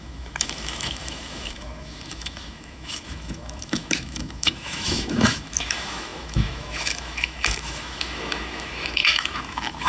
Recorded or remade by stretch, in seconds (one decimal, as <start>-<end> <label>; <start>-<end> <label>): 0.0-9.9 remade